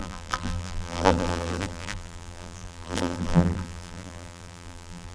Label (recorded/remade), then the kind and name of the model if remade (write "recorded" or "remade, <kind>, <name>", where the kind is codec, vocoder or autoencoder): remade, vocoder, BigVGAN v2